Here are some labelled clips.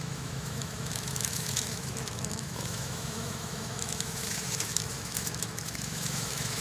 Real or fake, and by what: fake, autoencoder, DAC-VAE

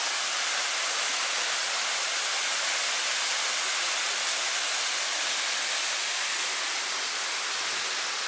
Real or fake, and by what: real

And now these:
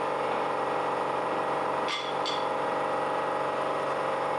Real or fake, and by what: fake, vocoder, BigVGAN v2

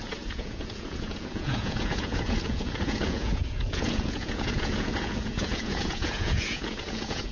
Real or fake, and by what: fake, vocoder, Vocos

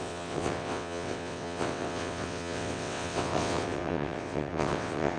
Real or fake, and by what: fake, vocoder, WaveNeXt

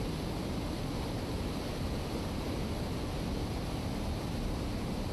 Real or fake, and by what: fake, vocoder, BigVGAN v2